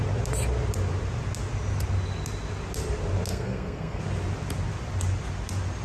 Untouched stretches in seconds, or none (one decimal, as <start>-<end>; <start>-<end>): 0.0-3.3; 4.0-5.8